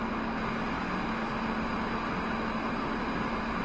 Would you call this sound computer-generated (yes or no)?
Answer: no